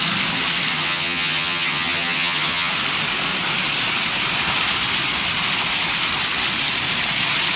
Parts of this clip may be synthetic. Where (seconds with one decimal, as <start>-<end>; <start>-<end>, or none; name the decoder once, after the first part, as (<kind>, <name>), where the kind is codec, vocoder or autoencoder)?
0.7-2.7 (vocoder, HiFi-GAN)